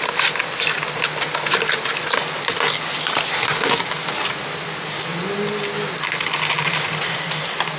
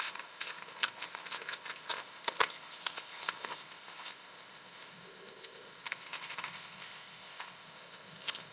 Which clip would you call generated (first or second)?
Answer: second